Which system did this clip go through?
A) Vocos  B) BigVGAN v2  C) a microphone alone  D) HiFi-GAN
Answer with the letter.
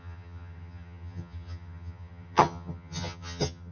D